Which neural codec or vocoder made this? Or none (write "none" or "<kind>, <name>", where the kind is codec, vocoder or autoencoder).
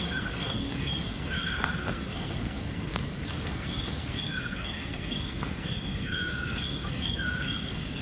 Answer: codec, SNAC